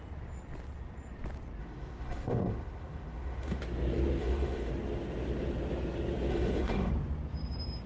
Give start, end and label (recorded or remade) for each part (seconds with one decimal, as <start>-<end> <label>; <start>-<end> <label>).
0.0-1.6 recorded; 1.6-3.6 remade; 3.6-4.2 recorded; 4.2-4.7 remade; 4.7-6.3 recorded; 6.3-6.9 remade; 6.9-7.9 recorded